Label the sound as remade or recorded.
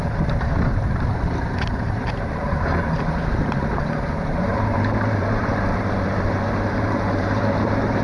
remade